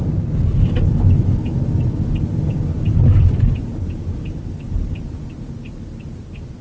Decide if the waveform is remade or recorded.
recorded